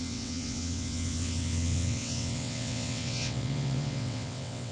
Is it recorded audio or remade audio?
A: remade